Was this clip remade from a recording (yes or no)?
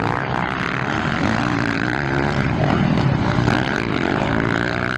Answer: yes